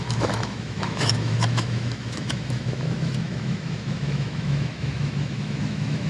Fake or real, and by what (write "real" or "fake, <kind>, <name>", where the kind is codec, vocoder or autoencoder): fake, autoencoder, DAC-VAE